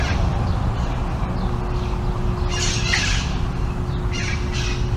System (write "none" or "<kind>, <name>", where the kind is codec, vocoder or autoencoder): none